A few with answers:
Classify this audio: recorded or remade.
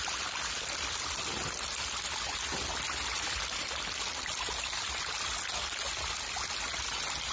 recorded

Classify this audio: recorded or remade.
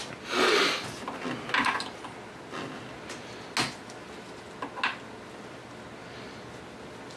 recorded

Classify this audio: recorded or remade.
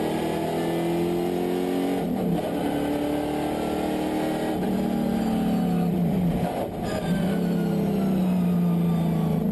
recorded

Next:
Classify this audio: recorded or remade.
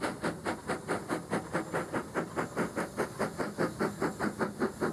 recorded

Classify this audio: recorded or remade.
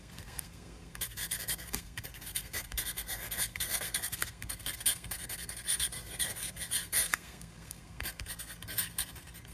remade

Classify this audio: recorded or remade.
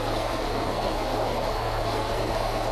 remade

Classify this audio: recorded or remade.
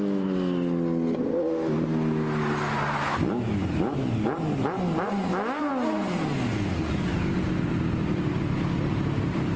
recorded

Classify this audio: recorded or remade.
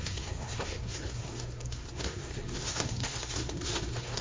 remade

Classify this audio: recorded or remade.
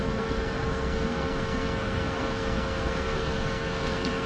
remade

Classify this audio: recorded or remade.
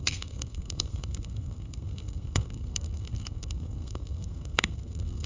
remade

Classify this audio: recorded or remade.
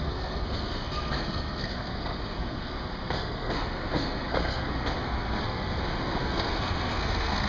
remade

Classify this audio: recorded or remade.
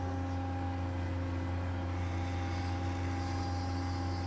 recorded